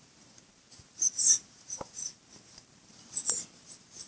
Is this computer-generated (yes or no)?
yes